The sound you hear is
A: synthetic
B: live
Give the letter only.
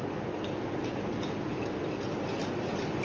B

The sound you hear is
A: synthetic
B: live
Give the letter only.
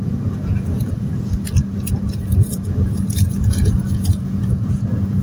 A